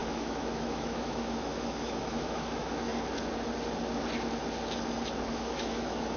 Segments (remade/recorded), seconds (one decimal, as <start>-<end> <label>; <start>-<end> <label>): 0.0-2.9 remade; 2.9-5.3 recorded; 5.3-6.2 remade